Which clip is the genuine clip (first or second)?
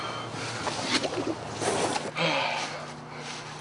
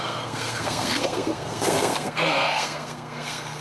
first